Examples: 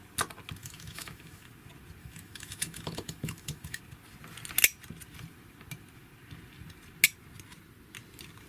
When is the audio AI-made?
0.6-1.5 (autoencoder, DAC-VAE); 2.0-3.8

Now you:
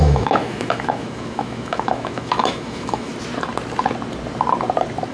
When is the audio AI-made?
0.0-3.1 (autoencoder, DAC-VAE)

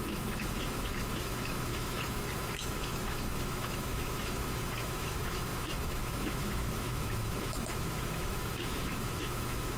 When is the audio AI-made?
0.0-9.8 (autoencoder, DAC-VAE)

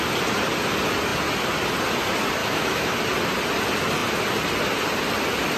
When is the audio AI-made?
2.4-3.0 (autoencoder, DAC-VAE)

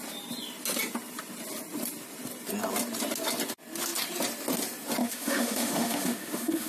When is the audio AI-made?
5.0-6.7 (autoencoder, DAC-VAE)

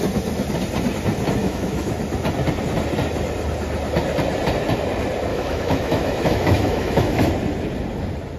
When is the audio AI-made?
1.4-1.9 (autoencoder, DAC-VAE); 5.3-7.3

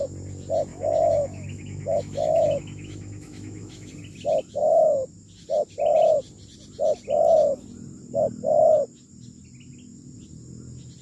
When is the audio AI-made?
0.7-3.9 (autoencoder, DAC-VAE)

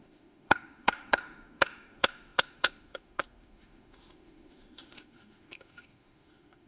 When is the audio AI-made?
0.0-6.7 (autoencoder, DAC-VAE)